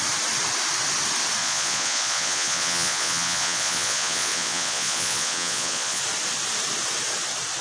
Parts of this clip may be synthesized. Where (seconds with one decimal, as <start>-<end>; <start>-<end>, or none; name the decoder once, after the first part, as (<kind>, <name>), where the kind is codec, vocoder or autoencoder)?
1.4-6.0 (vocoder, Vocos)

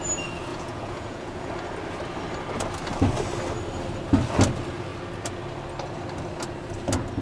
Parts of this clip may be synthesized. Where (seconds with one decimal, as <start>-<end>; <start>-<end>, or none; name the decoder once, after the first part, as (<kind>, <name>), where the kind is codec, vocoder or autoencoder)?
0.5-1.5 (vocoder, Vocos)

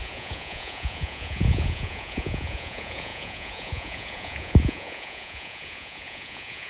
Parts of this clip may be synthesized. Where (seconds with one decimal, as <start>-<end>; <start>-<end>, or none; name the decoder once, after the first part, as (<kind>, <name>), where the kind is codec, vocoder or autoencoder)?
0.0-6.7 (vocoder, Vocos)

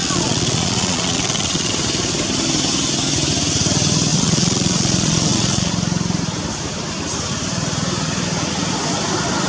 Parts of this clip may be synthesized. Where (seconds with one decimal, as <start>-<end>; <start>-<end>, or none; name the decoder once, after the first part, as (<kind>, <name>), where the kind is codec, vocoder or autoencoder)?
0.0-1.7 (vocoder, Vocos); 4.1-5.7

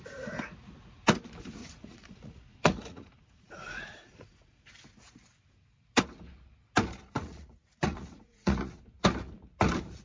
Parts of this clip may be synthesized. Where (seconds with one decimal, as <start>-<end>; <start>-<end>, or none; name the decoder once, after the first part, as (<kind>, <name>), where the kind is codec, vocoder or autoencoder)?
1.6-4.7 (vocoder, Vocos); 7.2-8.8